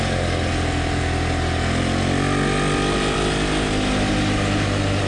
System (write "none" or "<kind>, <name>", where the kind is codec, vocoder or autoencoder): none